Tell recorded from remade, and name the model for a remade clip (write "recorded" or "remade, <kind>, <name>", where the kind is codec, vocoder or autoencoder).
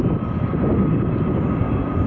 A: recorded